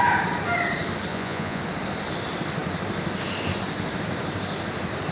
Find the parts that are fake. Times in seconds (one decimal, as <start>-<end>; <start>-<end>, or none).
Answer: 1.1-1.6

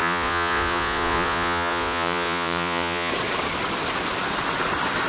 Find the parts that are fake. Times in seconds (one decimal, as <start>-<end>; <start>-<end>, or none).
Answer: 0.0-3.1

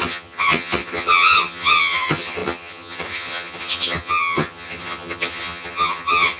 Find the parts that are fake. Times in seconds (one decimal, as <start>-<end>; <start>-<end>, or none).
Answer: 0.0-6.4

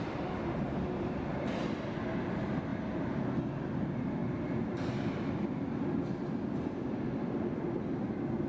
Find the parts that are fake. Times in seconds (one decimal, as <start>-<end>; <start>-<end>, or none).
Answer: none

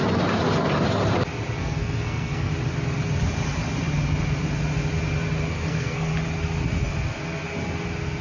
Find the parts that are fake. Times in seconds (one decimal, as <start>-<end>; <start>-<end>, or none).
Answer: 1.6-2.5; 5.5-6.1

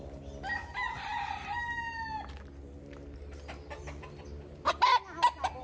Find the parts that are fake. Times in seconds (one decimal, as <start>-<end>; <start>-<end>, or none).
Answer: none

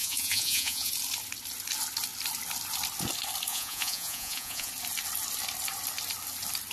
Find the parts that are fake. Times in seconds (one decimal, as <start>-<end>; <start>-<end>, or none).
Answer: 0.0-0.9; 3.5-4.7